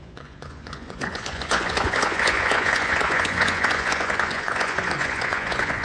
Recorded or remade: remade